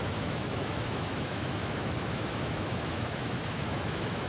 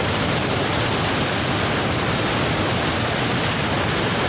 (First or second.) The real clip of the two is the second